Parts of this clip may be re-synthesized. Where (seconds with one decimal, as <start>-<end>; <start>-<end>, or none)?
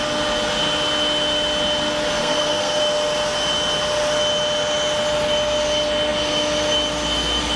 2.2-2.8